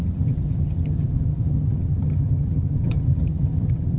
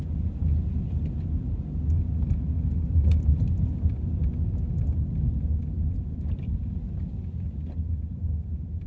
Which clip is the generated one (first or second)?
first